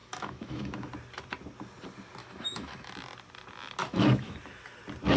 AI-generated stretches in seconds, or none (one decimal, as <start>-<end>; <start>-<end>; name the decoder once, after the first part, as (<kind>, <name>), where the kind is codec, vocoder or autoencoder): 0.0-0.9 (autoencoder, DAC-VAE); 2.2-2.9; 3.8-4.4